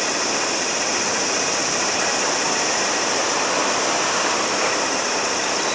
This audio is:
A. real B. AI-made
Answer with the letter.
A